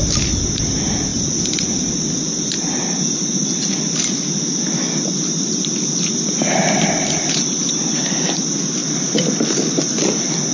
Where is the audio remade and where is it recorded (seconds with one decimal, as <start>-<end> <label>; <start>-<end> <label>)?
0.0-10.5 recorded